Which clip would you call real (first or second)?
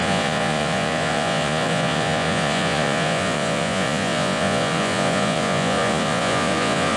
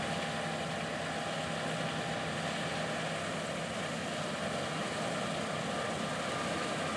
second